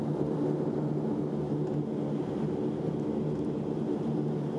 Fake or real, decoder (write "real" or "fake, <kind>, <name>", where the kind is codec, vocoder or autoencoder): real